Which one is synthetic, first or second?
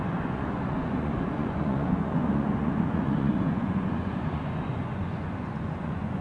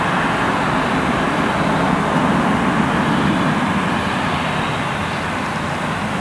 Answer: first